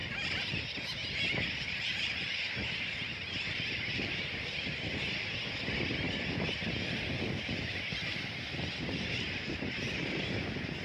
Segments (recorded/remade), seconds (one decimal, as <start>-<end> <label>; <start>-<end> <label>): 0.0-0.6 remade; 0.6-1.0 recorded; 1.0-5.1 remade; 5.1-8.0 recorded; 8.0-10.8 remade